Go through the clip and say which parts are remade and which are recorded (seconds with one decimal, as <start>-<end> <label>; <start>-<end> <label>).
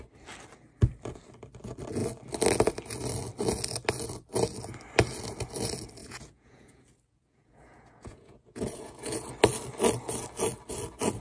0.0-6.0 recorded; 6.0-9.3 remade; 9.3-11.2 recorded